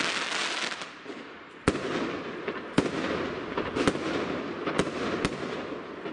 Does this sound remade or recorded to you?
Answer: recorded